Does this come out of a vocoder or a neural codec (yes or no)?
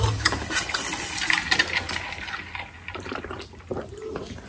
no